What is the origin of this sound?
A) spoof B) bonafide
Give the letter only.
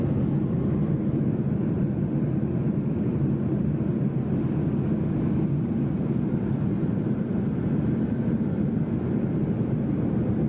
B